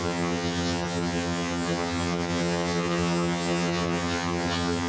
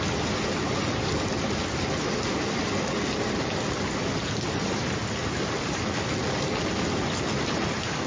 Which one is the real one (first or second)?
second